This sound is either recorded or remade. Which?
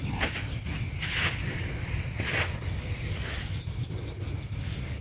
recorded